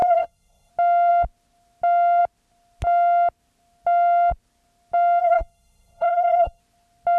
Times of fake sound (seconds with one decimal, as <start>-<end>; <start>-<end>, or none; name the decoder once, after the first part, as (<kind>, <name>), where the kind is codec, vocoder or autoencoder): 0.0-0.7 (codec, SNAC); 5.2-6.6